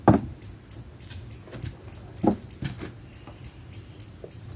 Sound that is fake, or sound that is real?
real